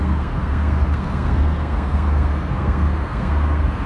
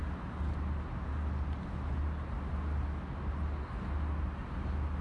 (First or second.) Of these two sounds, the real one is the second